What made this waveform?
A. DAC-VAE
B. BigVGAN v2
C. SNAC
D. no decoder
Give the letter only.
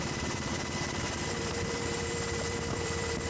B